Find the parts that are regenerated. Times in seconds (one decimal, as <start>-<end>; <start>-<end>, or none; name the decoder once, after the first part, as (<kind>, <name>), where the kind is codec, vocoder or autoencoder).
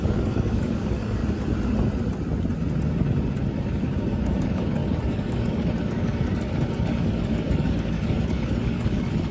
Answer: 0.0-1.2 (codec, DAC); 3.6-6.3; 6.8-9.3